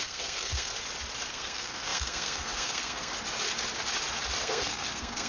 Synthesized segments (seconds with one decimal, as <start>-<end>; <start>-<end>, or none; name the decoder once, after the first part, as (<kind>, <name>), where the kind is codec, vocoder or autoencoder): 0.0-0.7 (codec, SNAC); 1.3-3.1; 4.4-5.3